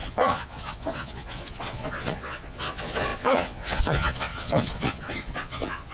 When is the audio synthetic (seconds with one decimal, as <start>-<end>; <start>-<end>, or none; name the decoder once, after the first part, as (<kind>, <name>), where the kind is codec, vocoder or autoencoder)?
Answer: 0.0-5.9 (vocoder, Vocos)